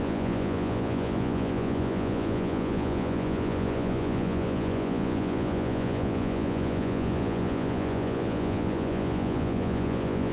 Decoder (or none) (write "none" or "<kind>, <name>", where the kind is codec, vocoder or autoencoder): vocoder, Vocos